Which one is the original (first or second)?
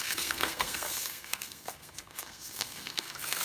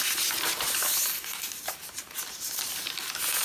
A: second